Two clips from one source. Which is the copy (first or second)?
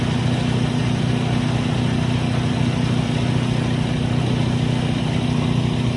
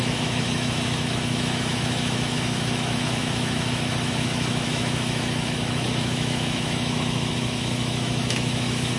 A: second